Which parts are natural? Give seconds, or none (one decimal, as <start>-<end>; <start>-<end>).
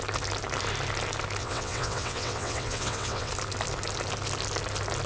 0.0-1.4; 3.3-5.1